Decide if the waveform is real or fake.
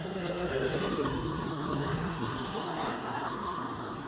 fake